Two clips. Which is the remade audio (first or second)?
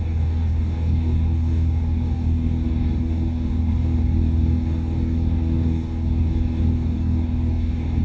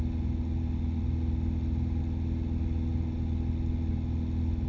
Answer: first